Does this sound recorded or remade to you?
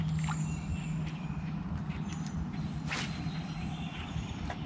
recorded